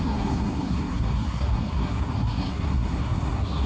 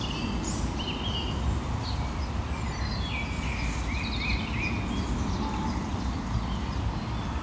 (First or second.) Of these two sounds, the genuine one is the second